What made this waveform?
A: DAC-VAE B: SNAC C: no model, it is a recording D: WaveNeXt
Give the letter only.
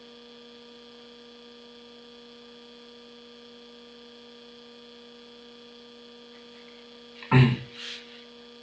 C